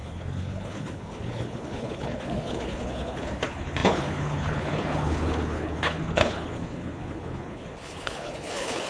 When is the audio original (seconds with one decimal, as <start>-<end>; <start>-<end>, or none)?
none